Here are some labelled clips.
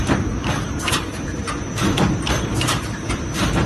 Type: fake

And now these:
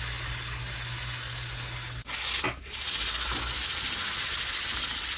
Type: real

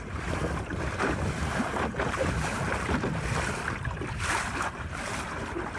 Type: real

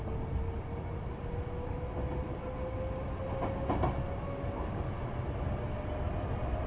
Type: real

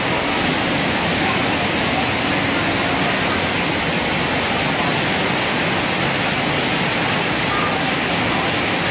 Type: real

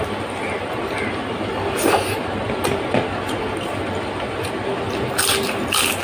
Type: real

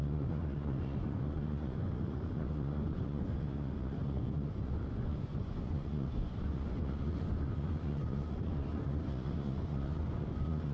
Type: fake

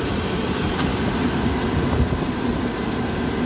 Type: fake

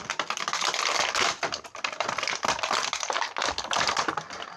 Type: real